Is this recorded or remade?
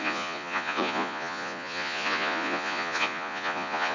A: remade